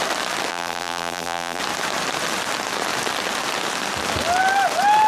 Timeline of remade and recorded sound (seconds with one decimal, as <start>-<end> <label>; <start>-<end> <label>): 0.0-0.5 recorded; 0.5-1.6 remade; 1.6-5.1 recorded